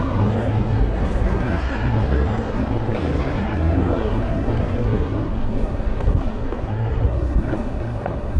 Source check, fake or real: fake